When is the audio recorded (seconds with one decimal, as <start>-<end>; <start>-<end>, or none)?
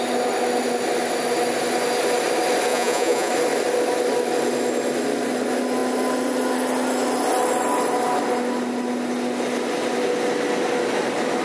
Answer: 0.0-2.7; 3.3-11.4